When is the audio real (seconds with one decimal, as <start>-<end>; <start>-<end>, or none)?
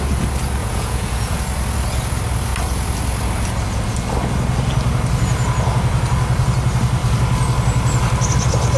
0.0-0.6; 1.4-8.8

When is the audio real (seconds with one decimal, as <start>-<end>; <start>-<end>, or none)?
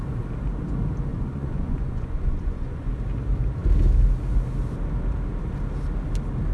0.0-1.1; 2.9-6.5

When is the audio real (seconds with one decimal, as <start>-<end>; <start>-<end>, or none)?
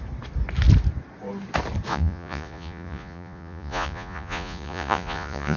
0.0-1.9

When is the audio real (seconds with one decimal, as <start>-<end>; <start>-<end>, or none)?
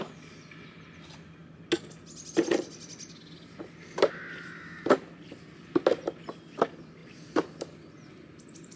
0.0-7.0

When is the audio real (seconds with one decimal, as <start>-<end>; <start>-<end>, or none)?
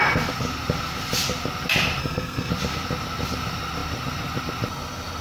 0.0-2.0; 2.5-5.2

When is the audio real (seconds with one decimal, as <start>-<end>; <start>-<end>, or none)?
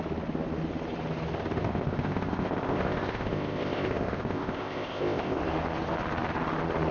0.0-1.6; 5.4-6.9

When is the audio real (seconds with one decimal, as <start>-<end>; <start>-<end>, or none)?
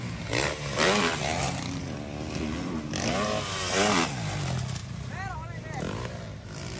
0.0-6.8